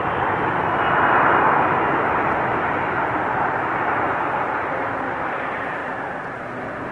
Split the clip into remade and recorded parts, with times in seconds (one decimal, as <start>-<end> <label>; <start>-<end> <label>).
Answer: 0.0-5.8 remade; 5.8-6.9 recorded